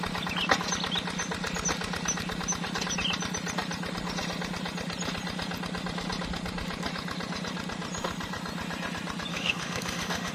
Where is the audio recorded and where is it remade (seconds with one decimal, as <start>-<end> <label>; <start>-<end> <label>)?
0.0-9.3 recorded; 9.3-10.3 remade